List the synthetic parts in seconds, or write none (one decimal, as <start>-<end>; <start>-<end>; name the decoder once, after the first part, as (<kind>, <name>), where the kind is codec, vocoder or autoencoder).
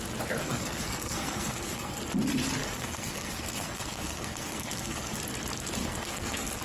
0.4-2.0 (codec, SNAC); 2.6-5.2; 5.8-6.6